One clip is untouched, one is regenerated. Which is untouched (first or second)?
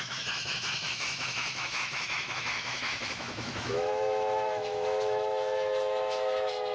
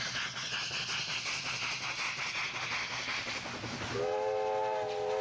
second